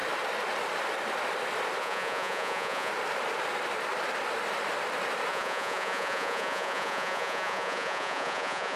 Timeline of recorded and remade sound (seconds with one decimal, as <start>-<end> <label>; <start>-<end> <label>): 0.0-1.8 recorded; 1.8-2.9 remade; 2.9-5.3 recorded; 5.3-8.8 remade